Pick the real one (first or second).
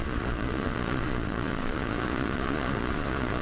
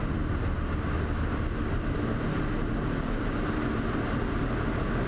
second